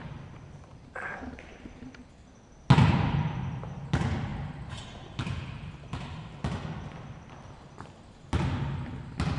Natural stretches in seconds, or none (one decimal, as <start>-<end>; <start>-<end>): 0.0-0.7; 2.6-4.3; 7.3-9.4